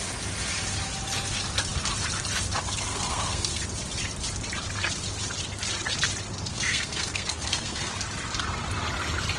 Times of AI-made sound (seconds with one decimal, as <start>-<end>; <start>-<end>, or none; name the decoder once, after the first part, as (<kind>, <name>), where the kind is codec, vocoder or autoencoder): 2.9-3.6 (codec, SNAC); 6.5-7.9